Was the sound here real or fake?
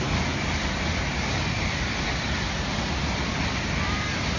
real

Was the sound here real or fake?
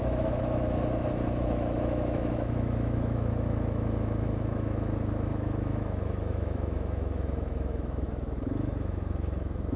fake